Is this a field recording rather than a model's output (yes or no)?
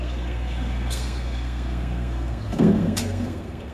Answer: no